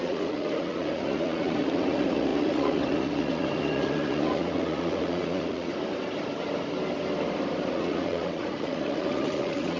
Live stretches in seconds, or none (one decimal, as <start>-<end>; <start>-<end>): 5.7-7.7